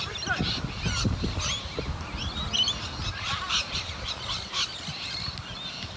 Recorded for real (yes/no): yes